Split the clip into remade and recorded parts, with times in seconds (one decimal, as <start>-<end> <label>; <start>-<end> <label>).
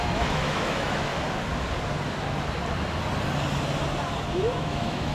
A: 0.0-1.1 remade; 1.1-4.2 recorded; 4.2-5.1 remade